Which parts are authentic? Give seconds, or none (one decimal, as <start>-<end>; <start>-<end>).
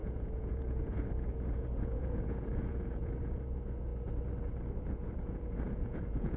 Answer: 3.9-4.8